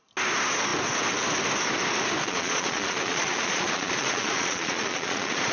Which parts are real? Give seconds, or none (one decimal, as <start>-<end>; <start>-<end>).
0.0-2.2